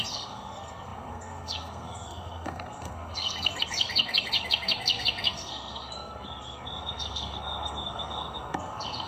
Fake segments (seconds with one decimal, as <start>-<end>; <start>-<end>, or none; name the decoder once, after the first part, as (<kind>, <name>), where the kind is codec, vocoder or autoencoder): 0.0-9.1 (codec, SNAC)